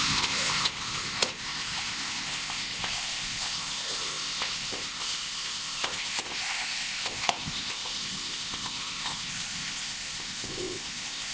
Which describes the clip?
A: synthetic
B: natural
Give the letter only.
A